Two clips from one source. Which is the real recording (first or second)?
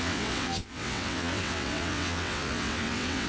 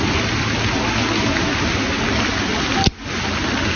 second